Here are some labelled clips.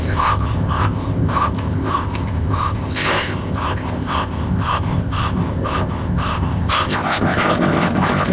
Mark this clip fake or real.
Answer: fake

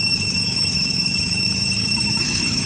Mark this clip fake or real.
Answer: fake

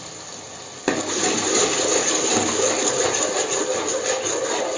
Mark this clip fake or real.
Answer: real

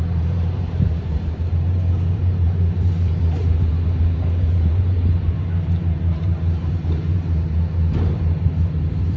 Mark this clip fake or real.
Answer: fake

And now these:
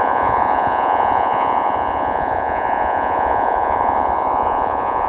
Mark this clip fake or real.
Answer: fake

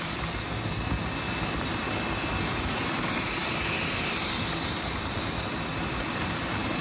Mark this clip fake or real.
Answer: real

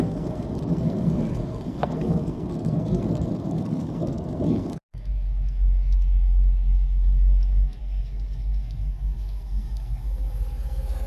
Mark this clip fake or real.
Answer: fake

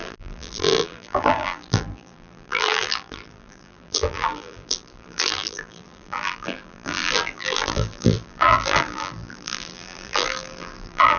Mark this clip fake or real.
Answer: fake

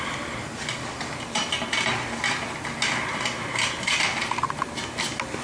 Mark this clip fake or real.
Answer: real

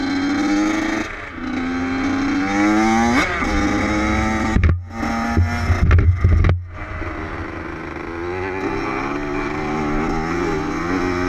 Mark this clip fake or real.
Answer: real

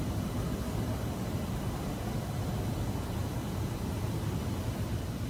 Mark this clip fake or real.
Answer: real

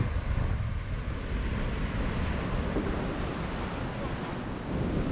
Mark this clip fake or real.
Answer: real